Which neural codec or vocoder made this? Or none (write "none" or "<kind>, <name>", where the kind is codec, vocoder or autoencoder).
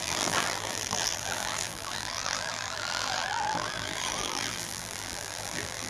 vocoder, BigVGAN v2